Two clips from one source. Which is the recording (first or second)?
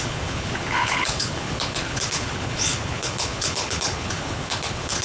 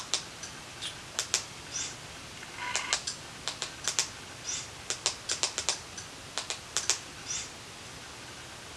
second